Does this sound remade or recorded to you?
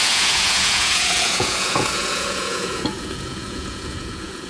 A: remade